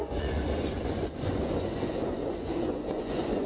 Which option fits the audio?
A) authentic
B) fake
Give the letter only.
B